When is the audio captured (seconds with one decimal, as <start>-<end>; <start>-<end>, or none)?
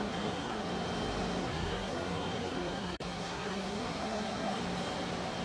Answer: 0.7-1.4; 4.6-5.4